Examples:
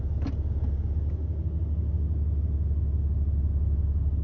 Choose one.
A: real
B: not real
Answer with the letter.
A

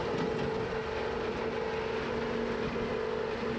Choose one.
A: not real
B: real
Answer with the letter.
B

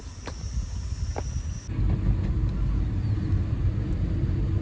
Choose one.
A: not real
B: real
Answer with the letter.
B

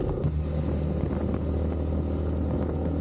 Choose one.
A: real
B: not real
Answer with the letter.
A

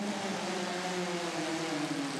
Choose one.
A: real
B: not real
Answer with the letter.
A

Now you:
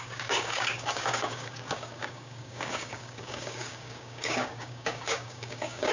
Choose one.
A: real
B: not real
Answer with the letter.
B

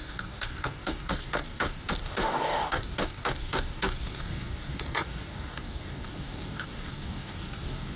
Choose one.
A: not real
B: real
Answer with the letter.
A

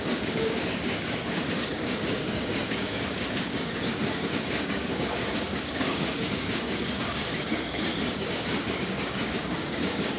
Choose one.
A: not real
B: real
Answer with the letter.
A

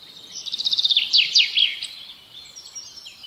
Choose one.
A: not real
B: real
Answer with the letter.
B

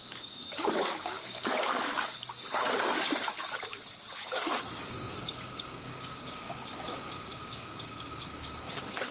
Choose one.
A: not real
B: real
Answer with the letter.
A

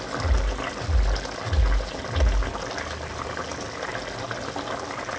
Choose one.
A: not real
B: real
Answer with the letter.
B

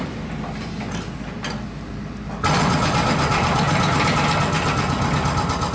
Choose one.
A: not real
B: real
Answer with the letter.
B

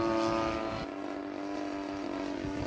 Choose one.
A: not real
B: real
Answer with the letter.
B